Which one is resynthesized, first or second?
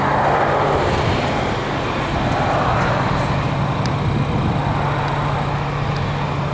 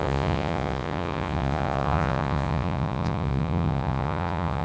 second